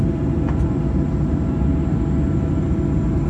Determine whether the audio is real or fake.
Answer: real